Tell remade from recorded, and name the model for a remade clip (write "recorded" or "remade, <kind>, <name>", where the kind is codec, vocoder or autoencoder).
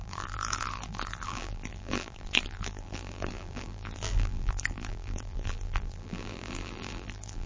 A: remade, vocoder, BigVGAN v2